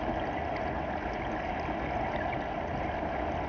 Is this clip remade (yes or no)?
no